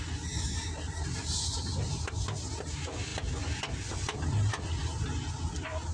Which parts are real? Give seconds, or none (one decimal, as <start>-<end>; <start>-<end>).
0.0-5.9